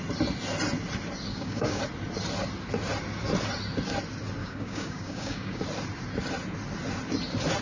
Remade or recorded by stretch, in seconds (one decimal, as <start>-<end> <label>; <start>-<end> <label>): 0.0-1.3 recorded; 1.3-1.8 remade; 1.8-4.4 recorded; 4.4-5.6 remade; 5.6-7.6 recorded